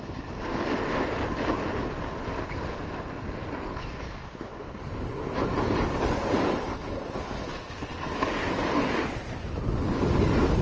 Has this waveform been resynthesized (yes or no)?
no